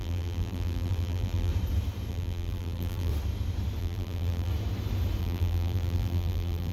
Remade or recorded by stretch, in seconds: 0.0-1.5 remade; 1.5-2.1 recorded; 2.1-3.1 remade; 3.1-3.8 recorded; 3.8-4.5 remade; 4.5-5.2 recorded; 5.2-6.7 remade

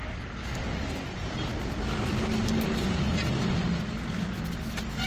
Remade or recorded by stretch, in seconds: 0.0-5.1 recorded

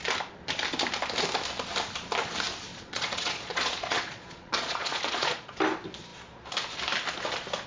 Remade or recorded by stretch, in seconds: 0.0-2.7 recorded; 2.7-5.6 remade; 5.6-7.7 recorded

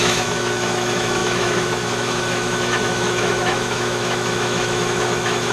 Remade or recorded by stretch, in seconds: 0.0-5.5 remade